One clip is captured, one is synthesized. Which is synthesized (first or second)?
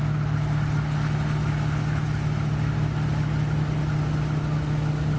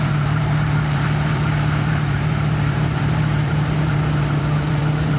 second